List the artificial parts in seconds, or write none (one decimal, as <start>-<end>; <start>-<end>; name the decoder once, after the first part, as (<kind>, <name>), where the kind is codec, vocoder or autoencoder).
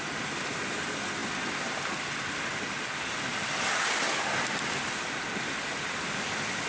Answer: none